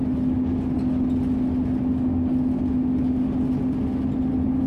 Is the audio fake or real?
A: real